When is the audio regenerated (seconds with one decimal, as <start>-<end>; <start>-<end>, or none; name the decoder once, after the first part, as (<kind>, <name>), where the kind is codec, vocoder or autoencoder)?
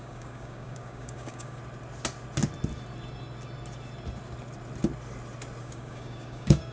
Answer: 0.0-1.6 (codec, DAC); 5.6-6.7